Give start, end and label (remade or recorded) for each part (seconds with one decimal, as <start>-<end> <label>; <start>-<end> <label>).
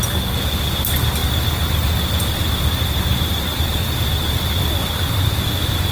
0.0-1.2 recorded; 1.2-4.7 remade; 4.7-5.9 recorded